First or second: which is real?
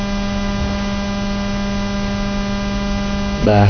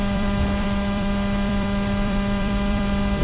first